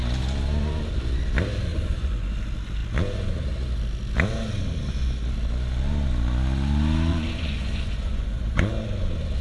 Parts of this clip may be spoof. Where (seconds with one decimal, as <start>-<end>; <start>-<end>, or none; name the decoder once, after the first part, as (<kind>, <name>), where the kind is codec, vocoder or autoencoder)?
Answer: 1.7-2.3 (vocoder, Vocos); 7.1-8.7